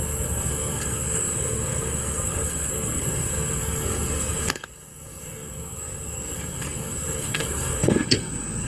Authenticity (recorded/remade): remade